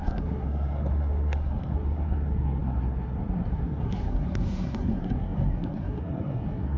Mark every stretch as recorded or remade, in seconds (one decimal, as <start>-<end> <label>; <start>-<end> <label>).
0.0-6.8 remade